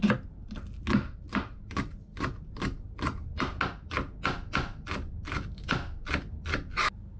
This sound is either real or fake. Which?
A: real